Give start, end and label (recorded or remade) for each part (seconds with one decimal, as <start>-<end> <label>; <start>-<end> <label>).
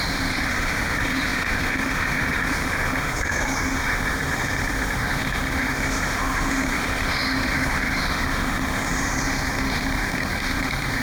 0.0-11.0 remade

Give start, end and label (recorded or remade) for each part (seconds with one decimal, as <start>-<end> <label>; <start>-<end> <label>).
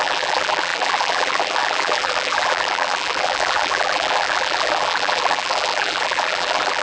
0.0-6.8 remade